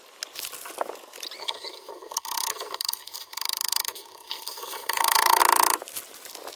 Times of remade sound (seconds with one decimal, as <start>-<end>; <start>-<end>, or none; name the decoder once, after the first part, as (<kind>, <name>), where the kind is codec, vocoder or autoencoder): 1.4-5.4 (codec, SNAC)